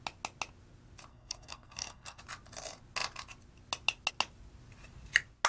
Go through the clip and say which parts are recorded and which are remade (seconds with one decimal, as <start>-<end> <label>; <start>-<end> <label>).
0.0-1.1 recorded; 1.1-2.2 remade; 2.2-5.5 recorded